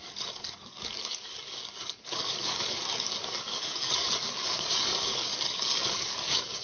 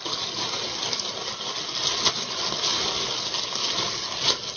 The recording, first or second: second